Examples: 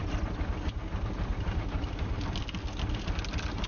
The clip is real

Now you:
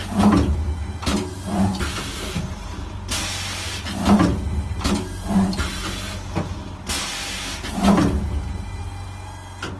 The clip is real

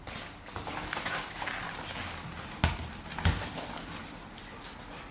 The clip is real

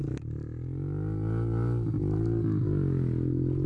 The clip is real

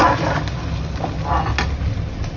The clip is real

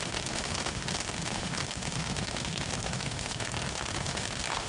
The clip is fake